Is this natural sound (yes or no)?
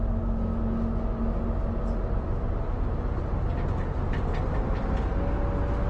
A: yes